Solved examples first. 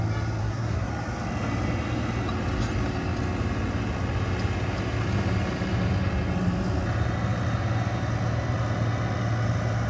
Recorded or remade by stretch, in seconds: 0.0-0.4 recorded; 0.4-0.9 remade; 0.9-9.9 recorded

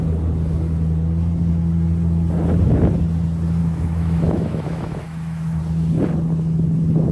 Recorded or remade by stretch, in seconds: 0.0-3.6 recorded; 3.6-5.6 remade; 5.6-7.1 recorded